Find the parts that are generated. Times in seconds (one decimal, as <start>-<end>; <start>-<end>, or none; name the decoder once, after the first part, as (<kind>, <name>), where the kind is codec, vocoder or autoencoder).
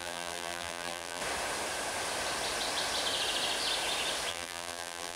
0.0-1.2 (vocoder, BigVGAN v2); 4.3-5.2